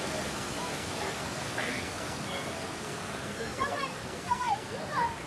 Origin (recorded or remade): remade